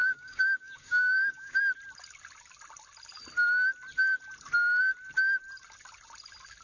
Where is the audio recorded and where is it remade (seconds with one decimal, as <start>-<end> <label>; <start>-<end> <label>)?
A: 0.0-1.6 remade; 1.6-6.6 recorded